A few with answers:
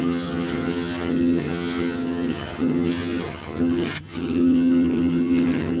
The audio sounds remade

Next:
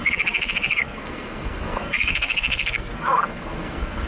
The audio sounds remade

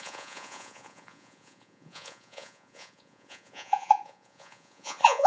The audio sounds remade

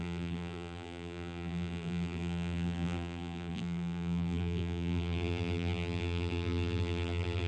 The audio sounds remade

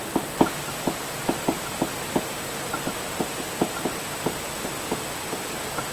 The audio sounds recorded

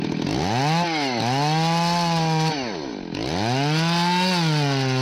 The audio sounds recorded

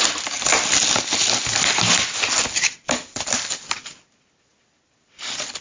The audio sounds recorded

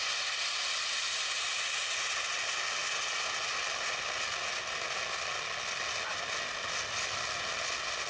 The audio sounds recorded